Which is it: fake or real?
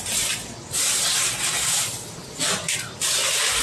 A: real